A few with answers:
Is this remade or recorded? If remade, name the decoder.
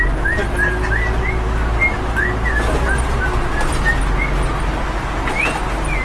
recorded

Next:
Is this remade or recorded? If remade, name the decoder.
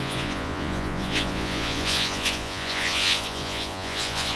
remade, vocoder, Vocos